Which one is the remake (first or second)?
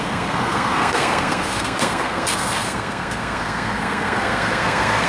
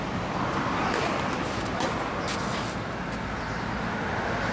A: first